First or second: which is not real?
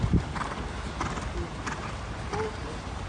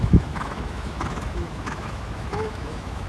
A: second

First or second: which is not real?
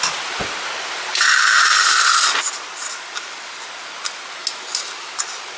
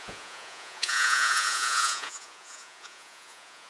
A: second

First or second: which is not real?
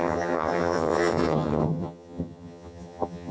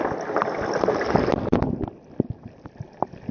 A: first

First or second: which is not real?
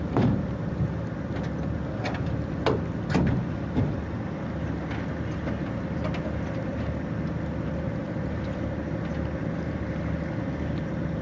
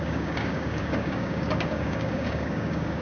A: second